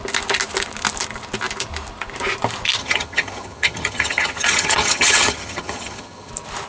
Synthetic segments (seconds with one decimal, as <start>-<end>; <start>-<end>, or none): 2.8-6.3